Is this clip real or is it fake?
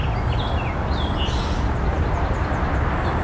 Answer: real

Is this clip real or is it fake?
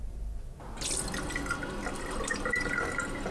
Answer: real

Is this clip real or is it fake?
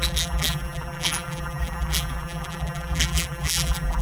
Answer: fake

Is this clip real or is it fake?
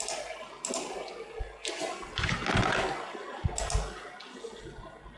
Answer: real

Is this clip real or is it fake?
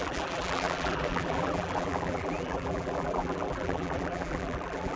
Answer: fake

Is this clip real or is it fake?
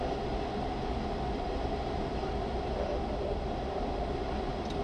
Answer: real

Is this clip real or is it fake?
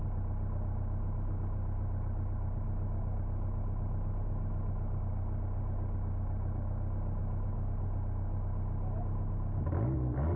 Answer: real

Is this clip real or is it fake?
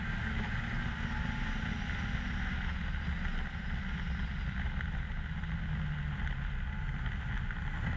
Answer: real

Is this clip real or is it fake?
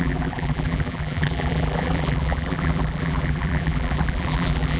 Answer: fake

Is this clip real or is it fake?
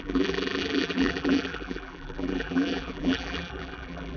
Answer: fake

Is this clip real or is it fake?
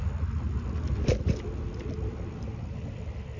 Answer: real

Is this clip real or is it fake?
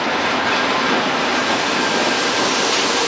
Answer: fake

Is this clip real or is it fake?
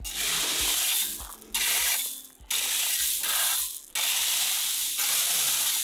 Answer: real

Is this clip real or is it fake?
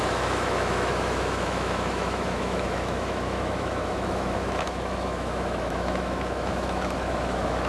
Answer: fake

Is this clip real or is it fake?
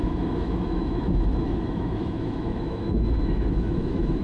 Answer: fake